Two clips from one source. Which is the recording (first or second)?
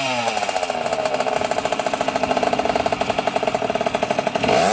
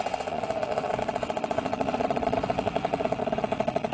first